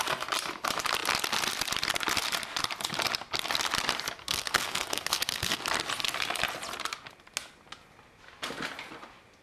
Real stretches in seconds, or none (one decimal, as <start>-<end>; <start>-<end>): 0.0-4.2; 5.6-9.4